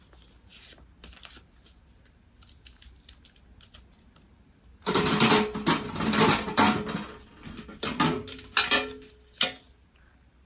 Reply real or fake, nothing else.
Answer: real